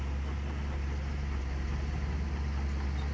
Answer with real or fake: real